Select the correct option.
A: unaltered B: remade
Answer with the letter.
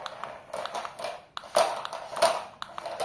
A